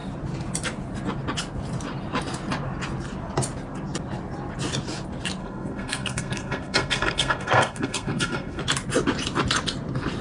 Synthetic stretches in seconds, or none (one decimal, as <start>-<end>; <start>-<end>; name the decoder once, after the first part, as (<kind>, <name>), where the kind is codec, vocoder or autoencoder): 5.4-8.6 (codec, SNAC)